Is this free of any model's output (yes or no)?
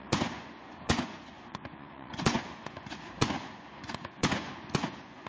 no